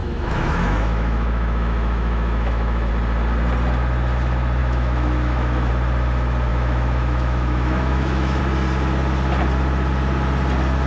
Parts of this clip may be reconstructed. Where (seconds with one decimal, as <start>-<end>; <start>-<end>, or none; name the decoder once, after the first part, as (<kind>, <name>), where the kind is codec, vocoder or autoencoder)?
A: 0.0-2.9 (autoencoder, DAC-VAE); 4.6-5.7; 6.5-8.4